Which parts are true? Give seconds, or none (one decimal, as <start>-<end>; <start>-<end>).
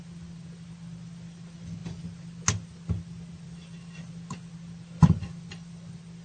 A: 0.0-6.2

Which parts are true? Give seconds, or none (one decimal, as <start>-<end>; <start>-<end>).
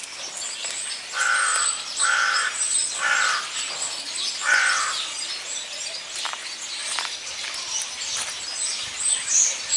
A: 0.0-9.8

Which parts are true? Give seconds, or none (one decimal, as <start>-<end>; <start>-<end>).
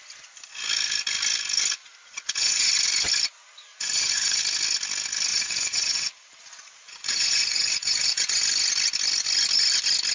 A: 0.0-1.8; 2.7-3.7; 4.4-5.3; 8.4-10.1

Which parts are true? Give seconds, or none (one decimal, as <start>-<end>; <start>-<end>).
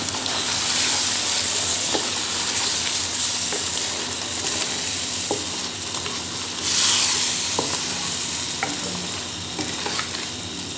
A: 0.6-1.7; 2.2-10.8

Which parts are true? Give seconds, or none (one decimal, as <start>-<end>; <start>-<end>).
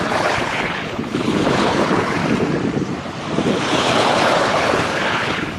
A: 2.2-3.5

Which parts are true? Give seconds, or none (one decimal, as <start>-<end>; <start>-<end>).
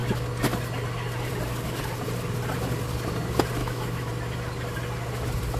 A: 0.0-3.6; 4.1-5.6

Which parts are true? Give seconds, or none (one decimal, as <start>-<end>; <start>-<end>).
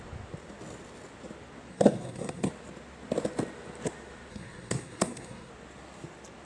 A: 0.0-1.7; 2.5-4.3; 5.5-6.5